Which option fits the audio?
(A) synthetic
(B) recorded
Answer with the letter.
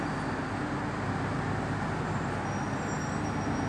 B